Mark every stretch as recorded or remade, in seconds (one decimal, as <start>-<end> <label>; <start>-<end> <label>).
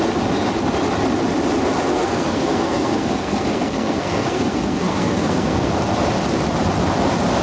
0.0-1.9 recorded; 1.9-5.7 remade; 5.7-7.4 recorded